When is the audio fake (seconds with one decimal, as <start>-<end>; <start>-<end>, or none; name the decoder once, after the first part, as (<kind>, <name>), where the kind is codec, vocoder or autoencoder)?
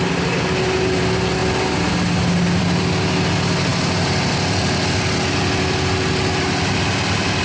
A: none